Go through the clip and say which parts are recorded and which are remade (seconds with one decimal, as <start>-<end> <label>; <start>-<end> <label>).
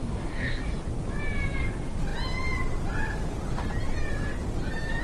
0.0-0.6 remade; 0.6-5.0 recorded